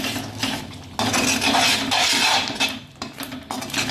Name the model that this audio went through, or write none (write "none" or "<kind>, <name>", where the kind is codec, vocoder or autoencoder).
none